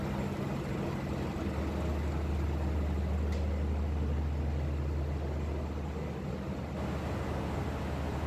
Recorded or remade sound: recorded